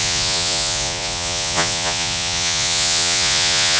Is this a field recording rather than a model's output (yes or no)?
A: no